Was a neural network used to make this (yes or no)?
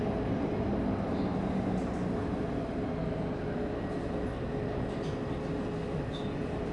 no